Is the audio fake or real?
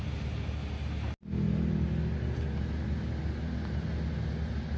real